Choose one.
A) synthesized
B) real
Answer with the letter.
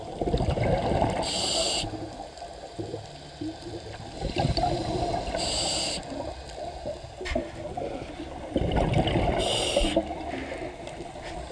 B